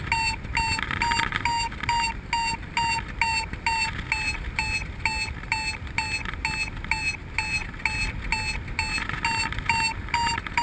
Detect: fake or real real